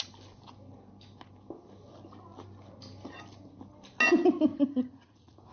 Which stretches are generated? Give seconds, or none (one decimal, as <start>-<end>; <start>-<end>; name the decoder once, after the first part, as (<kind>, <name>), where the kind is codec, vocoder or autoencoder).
4.5-5.5 (vocoder, Vocos)